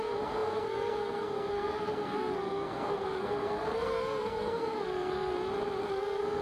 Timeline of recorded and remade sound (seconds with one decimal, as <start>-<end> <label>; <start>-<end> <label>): 0.0-5.3 remade; 5.3-5.8 recorded; 5.8-6.4 remade